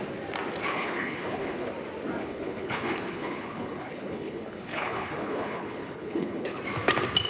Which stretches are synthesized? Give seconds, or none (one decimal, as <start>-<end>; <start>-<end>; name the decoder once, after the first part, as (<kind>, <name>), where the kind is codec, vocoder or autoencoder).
0.7-1.7 (codec, HILCodec); 2.2-6.6